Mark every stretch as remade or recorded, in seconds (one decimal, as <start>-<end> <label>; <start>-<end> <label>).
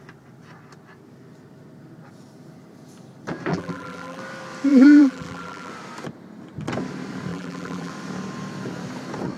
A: 0.0-3.5 recorded; 3.5-4.2 remade; 4.2-4.7 recorded; 4.7-5.7 remade; 5.7-7.3 recorded; 7.3-7.9 remade; 7.9-9.4 recorded